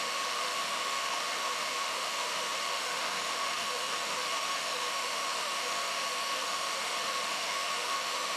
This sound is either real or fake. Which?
fake